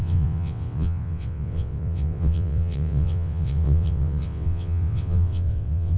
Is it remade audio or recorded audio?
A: remade